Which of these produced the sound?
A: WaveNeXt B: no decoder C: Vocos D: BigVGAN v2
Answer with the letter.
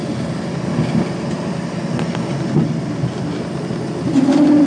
B